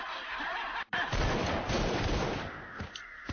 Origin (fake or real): fake